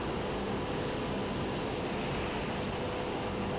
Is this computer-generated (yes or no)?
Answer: no